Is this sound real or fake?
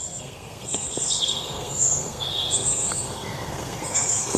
fake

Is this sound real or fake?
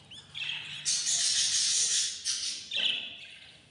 real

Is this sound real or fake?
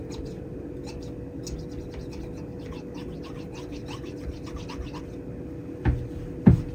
real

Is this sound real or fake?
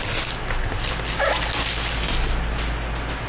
real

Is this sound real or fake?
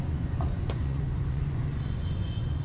fake